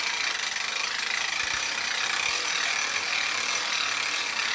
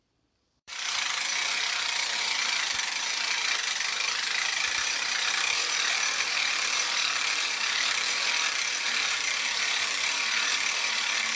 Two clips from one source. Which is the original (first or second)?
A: first